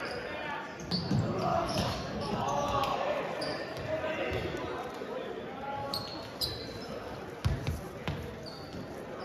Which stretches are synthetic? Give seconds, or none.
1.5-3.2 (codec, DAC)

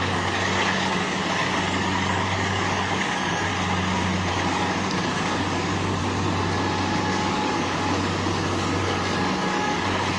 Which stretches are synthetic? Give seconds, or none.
0.0-3.5 (codec, DAC); 4.3-6.0; 7.0-10.2

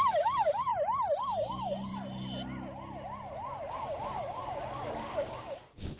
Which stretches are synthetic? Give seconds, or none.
0.0-0.7 (codec, DAC); 1.2-1.9; 3.7-6.0

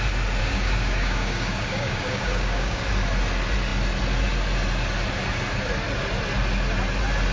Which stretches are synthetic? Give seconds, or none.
0.4-2.8 (codec, DAC)

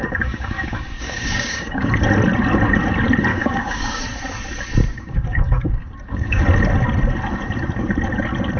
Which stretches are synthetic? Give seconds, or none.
0.0-1.9 (codec, DAC); 3.3-4.0; 4.9-6.4

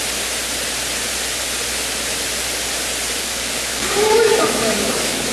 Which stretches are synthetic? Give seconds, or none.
3.2-5.3 (codec, DAC)

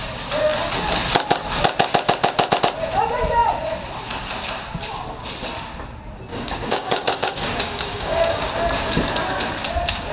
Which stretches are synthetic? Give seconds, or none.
6.3-8.5 (codec, DAC)